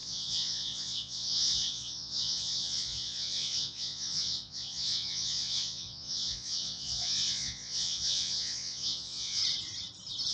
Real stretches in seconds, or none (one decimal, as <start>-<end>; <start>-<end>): 9.4-10.3